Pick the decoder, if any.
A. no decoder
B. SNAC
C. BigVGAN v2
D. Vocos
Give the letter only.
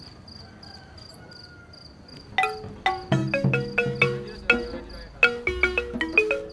A